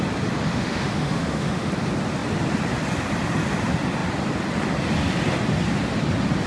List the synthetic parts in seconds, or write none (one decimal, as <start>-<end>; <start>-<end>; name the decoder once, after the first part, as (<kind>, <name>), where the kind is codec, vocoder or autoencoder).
0.5-1.7 (autoencoder, DAC-VAE)